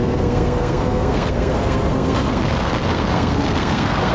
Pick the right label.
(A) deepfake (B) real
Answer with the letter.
A